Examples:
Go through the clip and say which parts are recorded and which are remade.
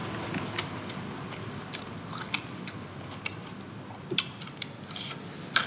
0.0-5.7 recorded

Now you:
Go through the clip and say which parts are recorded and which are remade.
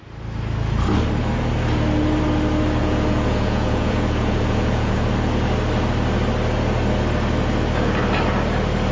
0.0-2.8 recorded; 2.8-5.1 remade; 5.1-8.9 recorded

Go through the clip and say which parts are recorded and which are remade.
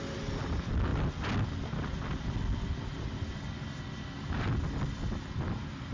0.0-5.9 recorded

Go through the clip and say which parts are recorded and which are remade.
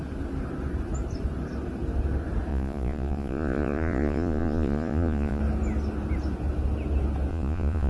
0.0-2.5 recorded; 2.5-5.4 remade; 5.4-7.3 recorded; 7.3-7.9 remade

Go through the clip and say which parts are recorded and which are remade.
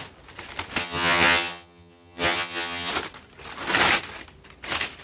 0.0-0.8 recorded; 0.8-2.9 remade; 2.9-5.0 recorded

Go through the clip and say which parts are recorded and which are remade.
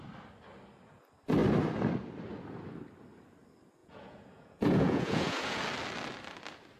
0.0-3.8 recorded; 3.8-5.6 remade; 5.6-6.8 recorded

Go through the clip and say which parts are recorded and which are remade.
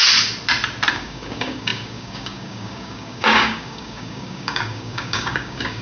0.0-0.9 recorded; 0.9-5.8 remade